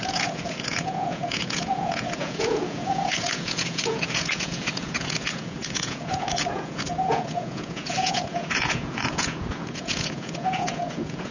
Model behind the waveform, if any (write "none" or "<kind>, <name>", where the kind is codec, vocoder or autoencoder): vocoder, Vocos